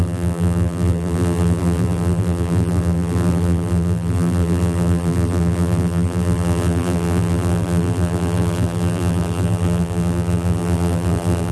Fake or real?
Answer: fake